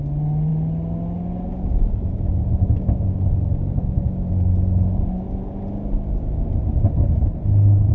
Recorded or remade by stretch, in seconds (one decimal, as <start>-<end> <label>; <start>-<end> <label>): 0.0-6.9 recorded; 6.9-7.9 remade